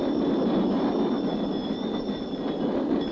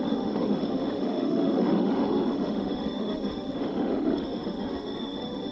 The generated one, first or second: second